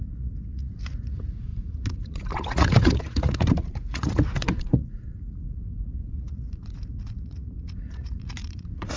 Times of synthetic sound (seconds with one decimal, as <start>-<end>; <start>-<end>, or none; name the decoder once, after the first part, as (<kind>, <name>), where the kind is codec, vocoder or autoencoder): 0.0-9.0 (vocoder, Vocos)